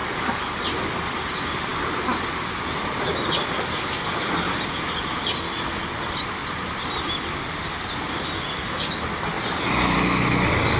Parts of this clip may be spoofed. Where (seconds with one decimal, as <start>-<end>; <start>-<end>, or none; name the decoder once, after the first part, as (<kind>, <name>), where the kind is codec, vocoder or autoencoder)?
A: 0.0-0.6 (codec, DAC)